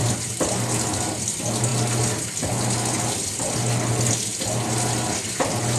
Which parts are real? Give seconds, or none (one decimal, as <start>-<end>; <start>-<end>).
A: 0.9-5.8